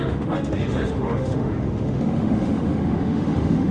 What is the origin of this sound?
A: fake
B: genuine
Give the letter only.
A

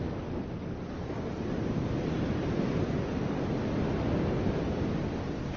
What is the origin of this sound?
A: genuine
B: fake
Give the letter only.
A